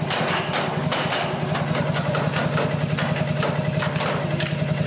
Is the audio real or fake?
real